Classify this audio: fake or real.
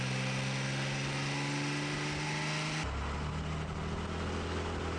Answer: real